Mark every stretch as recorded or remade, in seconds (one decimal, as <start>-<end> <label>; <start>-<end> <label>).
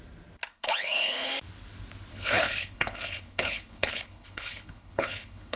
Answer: 0.0-0.5 recorded; 0.5-1.3 remade; 1.3-2.1 recorded; 2.1-5.6 remade